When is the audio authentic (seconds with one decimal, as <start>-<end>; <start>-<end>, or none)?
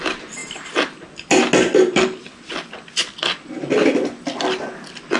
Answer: 0.0-5.2